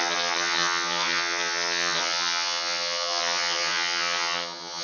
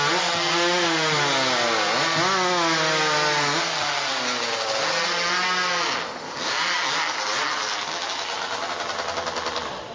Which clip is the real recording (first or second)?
second